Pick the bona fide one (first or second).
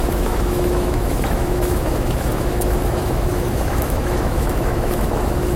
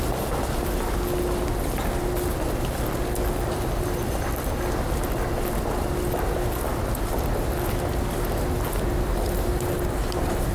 second